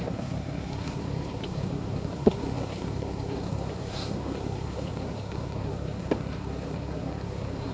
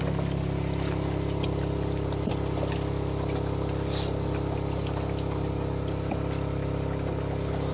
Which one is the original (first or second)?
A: second